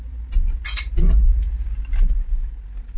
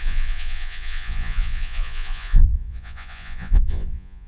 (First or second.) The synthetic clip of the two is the second